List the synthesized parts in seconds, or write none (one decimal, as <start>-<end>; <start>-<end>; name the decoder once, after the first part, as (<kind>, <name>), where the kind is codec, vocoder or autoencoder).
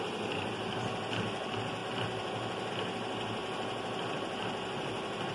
none